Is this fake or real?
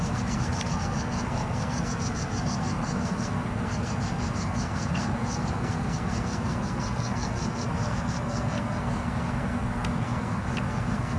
fake